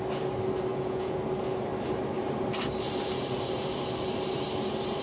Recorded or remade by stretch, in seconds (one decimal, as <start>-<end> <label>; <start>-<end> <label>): 0.0-0.7 recorded; 0.7-1.2 remade; 1.2-5.0 recorded